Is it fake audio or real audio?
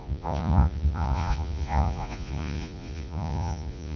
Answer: fake